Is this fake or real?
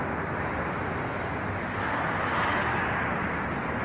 real